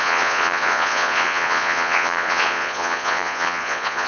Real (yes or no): no